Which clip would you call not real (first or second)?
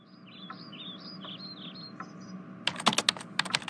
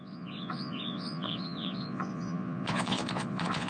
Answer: second